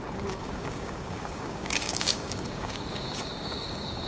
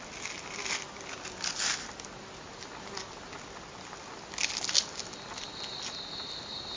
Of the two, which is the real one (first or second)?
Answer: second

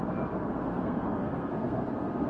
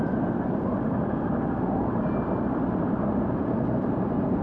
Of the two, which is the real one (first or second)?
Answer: second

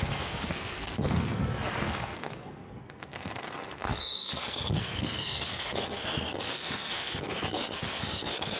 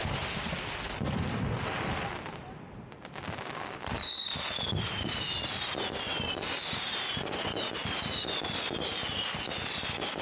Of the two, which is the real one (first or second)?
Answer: second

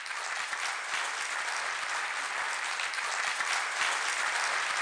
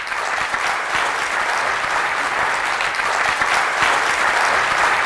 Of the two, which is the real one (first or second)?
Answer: first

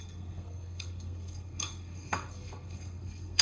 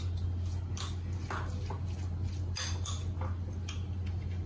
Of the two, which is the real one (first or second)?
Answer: second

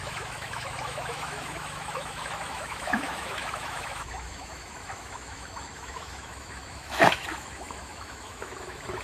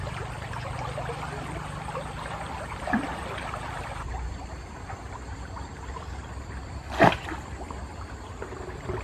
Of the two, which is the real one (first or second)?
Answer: second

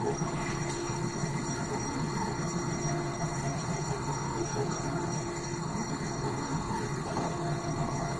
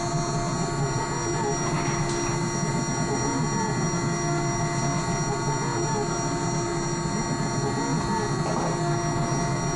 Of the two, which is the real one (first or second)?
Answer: second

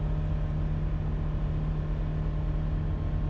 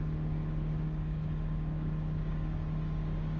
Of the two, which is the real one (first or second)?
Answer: first